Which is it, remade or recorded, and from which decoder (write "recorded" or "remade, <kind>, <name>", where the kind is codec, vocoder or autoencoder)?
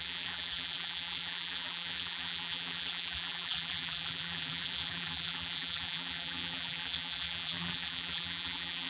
remade, vocoder, BigVGAN v2